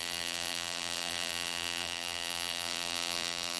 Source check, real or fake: fake